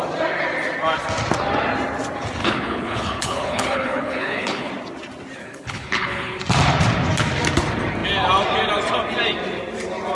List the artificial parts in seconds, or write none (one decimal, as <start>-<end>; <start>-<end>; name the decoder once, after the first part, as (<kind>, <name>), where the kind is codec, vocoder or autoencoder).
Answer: 2.4-4.7 (codec, HILCodec); 5.4-6.4